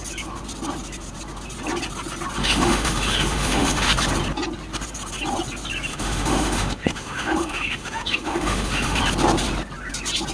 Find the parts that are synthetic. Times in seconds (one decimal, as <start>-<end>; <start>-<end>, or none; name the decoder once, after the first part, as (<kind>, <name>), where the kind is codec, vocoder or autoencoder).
2.4-3.9 (autoencoder, DAC-VAE); 5.9-9.0